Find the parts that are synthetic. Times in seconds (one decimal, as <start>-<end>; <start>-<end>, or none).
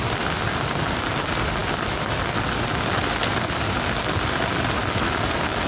none